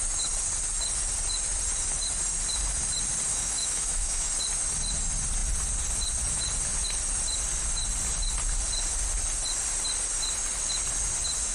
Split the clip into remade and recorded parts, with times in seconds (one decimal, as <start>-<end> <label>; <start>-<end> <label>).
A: 0.0-3.3 recorded; 3.3-4.3 remade; 4.3-11.5 recorded